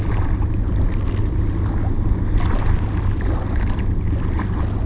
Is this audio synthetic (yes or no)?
no